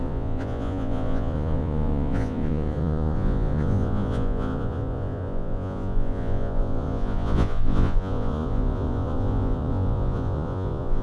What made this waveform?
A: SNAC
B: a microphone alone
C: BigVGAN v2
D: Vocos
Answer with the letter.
D